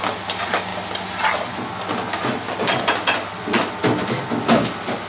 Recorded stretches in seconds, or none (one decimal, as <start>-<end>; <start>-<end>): 0.0-5.1